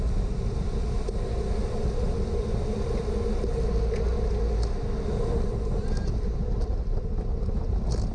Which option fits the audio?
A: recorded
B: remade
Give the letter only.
A